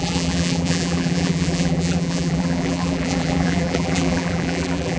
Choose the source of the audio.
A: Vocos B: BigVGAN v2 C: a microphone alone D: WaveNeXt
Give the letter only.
B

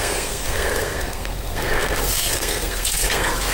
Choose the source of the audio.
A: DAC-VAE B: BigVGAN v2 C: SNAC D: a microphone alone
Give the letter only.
C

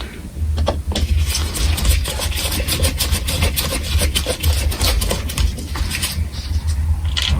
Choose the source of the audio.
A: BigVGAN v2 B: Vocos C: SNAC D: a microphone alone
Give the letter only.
D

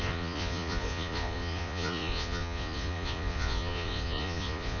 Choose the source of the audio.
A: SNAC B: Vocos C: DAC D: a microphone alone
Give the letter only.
B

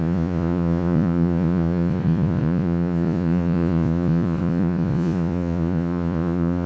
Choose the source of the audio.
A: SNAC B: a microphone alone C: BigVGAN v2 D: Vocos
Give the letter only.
D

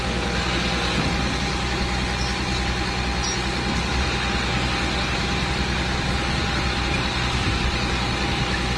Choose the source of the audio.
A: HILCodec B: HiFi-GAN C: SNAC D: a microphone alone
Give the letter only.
D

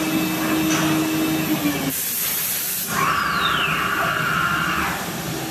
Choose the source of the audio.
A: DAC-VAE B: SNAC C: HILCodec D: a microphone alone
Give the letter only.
D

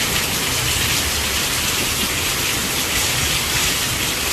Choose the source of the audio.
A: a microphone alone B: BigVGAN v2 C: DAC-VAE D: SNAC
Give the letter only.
A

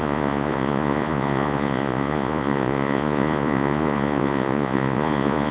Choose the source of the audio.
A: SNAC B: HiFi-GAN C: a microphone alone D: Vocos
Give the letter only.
D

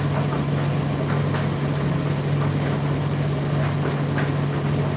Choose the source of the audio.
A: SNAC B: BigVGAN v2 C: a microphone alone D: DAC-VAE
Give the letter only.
C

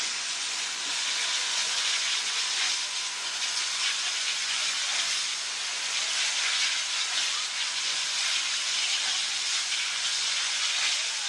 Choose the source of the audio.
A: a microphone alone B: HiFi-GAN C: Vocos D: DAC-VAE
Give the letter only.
C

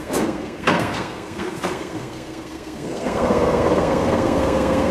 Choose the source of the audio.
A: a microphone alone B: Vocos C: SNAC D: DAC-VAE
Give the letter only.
C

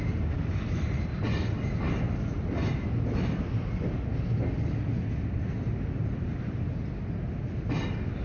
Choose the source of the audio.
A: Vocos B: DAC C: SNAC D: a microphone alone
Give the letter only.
D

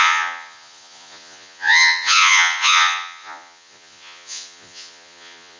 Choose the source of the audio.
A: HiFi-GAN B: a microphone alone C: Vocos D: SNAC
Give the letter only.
C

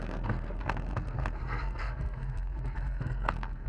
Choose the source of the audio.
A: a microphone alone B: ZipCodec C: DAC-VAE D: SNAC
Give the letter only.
D